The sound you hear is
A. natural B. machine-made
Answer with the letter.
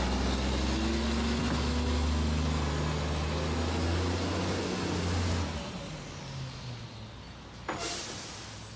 A